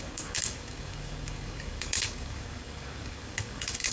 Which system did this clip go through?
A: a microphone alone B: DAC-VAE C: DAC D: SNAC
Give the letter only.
C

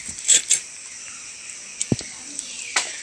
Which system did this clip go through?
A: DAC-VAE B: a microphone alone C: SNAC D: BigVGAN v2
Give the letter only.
D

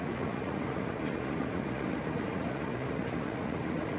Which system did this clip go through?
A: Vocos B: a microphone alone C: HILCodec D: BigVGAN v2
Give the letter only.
A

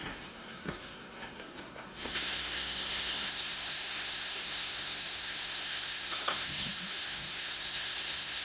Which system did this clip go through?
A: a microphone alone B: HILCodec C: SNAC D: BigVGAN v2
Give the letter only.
C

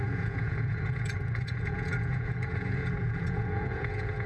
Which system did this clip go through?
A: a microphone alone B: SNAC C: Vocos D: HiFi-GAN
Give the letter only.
C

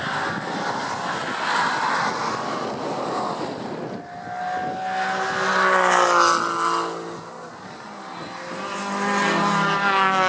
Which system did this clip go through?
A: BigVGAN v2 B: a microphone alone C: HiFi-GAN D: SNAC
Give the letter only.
B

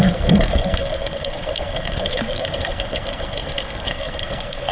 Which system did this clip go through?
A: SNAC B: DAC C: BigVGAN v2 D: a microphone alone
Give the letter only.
A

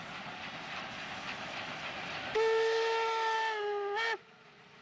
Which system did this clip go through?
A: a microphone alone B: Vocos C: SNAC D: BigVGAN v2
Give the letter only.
A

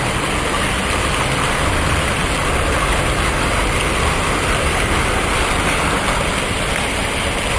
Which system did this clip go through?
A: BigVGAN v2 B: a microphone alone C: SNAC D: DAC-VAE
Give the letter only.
B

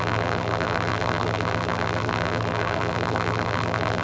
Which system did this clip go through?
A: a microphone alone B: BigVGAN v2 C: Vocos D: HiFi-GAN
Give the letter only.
B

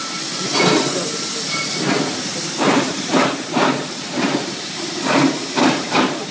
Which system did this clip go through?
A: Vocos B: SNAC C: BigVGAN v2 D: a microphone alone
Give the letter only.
C